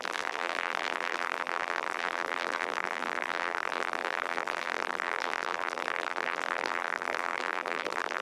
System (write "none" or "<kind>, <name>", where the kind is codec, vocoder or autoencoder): vocoder, BigVGAN v2